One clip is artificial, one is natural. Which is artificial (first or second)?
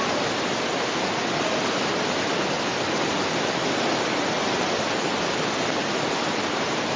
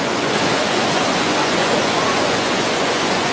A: second